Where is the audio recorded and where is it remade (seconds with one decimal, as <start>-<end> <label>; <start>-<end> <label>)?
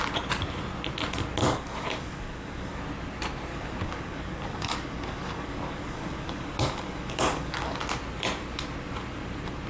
0.0-1.4 recorded; 1.4-2.8 remade; 2.8-3.5 recorded; 3.5-7.8 remade; 7.8-9.7 recorded